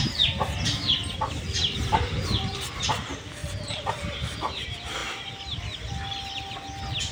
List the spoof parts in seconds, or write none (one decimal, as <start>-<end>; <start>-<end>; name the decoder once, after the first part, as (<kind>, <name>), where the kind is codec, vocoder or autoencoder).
1.0-2.9 (vocoder, BigVGAN v2); 3.4-3.9